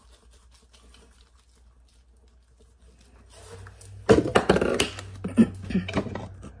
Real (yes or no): yes